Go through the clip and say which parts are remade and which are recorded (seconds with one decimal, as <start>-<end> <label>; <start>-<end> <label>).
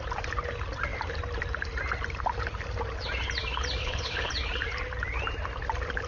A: 0.0-3.8 recorded; 3.8-4.3 remade; 4.3-6.1 recorded